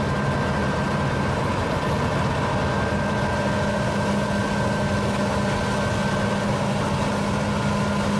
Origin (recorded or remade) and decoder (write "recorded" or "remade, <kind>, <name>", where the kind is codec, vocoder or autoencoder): recorded